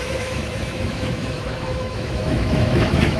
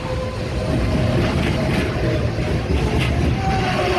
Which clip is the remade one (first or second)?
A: first